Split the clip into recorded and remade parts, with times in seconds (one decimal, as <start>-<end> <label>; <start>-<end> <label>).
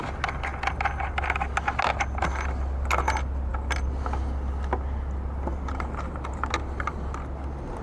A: 0.0-7.8 recorded